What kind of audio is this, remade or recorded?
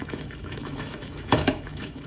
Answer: remade